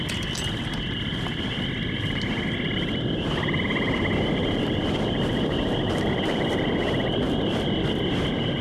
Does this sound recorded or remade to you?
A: recorded